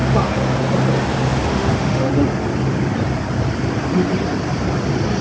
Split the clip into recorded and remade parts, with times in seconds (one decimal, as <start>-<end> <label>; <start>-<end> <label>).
0.0-1.5 recorded; 1.5-2.1 remade; 2.1-5.2 recorded